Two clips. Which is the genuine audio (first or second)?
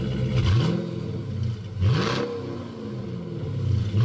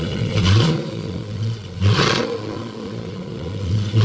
first